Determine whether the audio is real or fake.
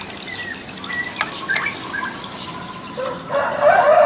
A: real